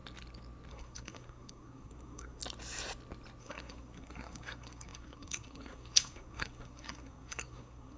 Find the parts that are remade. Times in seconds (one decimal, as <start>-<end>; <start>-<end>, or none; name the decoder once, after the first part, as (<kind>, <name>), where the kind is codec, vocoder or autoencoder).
0.7-2.4 (codec, SNAC); 3.4-8.0

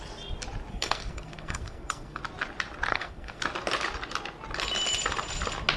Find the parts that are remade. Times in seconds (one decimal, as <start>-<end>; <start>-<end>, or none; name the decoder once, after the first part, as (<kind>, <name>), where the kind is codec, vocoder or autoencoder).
0.7-2.2 (codec, SNAC); 2.9-3.4

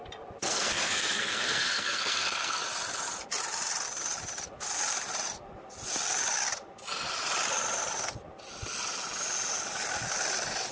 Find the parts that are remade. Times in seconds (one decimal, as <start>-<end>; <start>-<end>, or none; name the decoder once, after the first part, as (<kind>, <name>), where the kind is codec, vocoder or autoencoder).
0.4-2.6 (codec, SNAC)

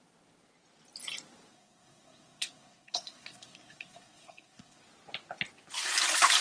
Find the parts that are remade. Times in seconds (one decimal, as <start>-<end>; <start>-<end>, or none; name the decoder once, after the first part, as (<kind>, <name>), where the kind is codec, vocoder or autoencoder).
1.5-4.8 (codec, SNAC)

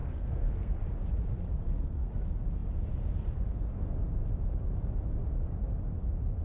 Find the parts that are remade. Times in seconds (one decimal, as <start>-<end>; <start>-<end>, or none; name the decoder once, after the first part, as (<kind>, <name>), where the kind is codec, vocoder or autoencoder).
0.0-0.7 (codec, SNAC); 1.6-2.1